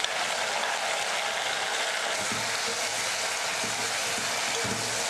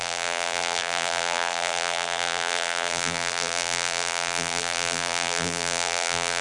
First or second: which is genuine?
first